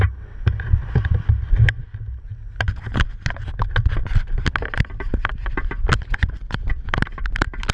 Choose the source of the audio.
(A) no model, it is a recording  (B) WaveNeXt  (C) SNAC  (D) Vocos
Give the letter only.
A